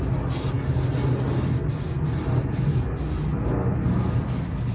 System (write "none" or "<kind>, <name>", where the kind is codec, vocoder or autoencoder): none